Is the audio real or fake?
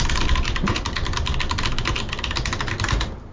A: real